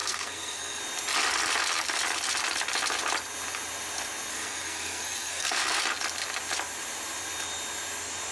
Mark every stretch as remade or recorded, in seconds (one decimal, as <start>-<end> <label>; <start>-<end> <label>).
0.0-0.8 remade; 0.8-4.3 recorded; 4.3-5.8 remade; 5.8-8.3 recorded